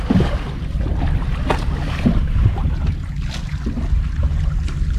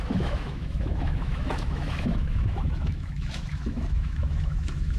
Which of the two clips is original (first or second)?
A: first